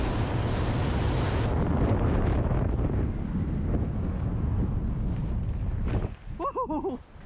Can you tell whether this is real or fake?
real